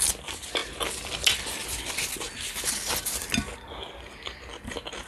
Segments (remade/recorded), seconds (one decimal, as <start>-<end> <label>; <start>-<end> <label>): 0.0-5.1 recorded